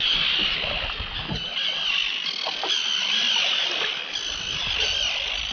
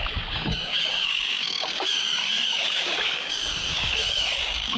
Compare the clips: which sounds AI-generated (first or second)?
second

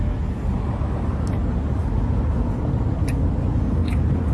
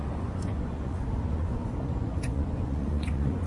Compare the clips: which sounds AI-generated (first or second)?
second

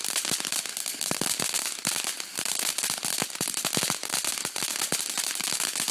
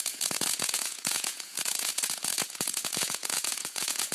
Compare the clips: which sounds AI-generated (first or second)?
second